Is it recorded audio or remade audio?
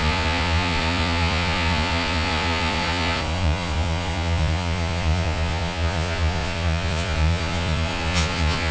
remade